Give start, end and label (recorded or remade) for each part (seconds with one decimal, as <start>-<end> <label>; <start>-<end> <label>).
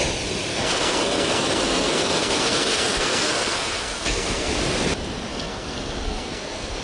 0.0-0.5 recorded; 0.5-4.5 remade; 4.5-5.3 recorded; 5.3-6.8 remade